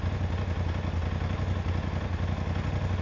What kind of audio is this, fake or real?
real